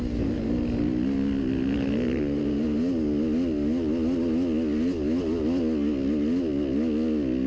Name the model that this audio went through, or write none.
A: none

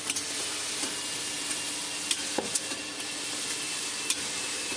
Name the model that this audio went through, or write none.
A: none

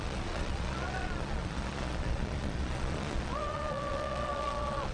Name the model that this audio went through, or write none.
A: vocoder, Vocos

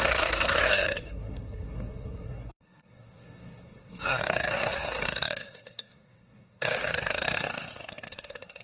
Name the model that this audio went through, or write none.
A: codec, SNAC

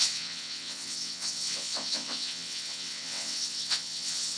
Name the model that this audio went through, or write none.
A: vocoder, WaveNeXt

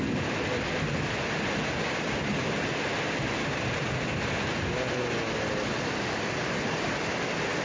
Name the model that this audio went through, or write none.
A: none